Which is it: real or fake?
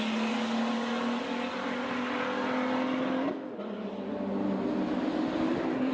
real